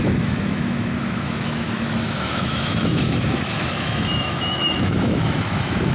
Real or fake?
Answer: fake